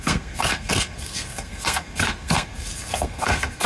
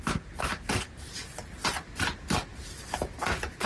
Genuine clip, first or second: second